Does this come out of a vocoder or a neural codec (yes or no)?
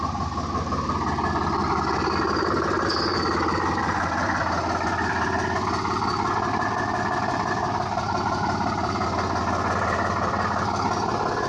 yes